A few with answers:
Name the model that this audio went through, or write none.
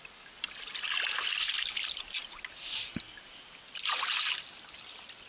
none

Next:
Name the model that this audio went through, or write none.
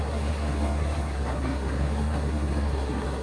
codec, SNAC